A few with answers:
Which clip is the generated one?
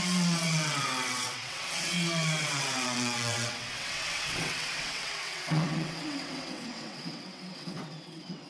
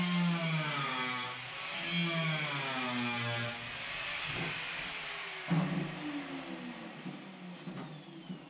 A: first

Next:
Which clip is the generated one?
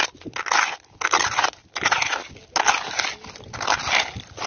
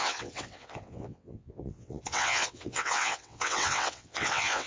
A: second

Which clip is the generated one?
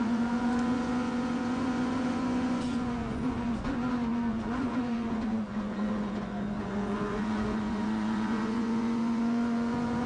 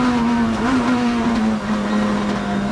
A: first